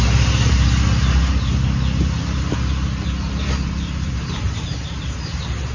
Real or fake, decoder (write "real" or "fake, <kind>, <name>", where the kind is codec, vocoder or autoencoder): real